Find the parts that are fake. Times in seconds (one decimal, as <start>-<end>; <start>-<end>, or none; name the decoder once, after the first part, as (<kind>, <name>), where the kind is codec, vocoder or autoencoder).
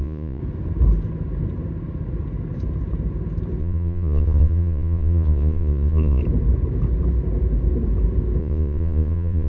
0.0-0.4 (vocoder, Vocos); 3.6-6.2; 8.4-9.5